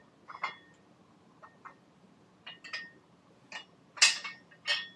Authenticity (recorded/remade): recorded